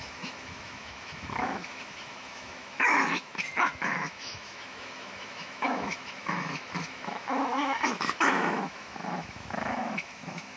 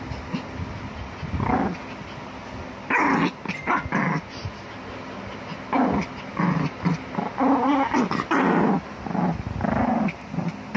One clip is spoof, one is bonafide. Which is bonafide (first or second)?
second